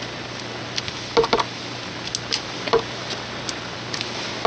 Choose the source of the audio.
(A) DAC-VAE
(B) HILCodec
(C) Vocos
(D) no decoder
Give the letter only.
D